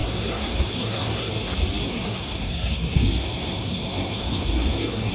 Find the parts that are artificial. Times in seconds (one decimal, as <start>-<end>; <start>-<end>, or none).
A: 0.0-1.3; 1.8-5.1